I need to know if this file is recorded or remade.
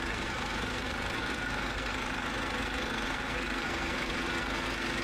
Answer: remade